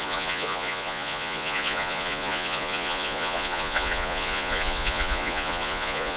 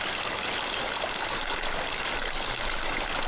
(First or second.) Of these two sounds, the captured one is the second